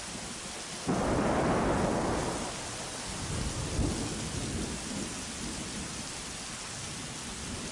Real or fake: real